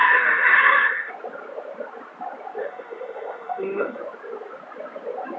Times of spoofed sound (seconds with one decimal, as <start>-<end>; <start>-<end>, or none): 0.0-1.1; 2.6-4.0